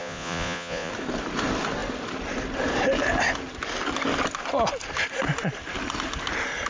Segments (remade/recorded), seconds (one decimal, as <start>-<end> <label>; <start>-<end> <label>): 0.0-0.9 remade; 0.9-6.7 recorded